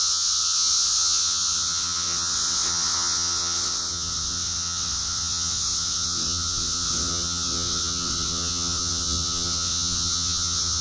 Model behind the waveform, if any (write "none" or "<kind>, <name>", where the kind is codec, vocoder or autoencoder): vocoder, WaveNeXt